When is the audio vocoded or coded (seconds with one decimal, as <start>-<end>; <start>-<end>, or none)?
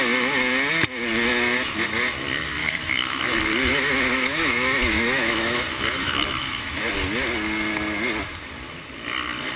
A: 2.6-3.2; 3.7-6.7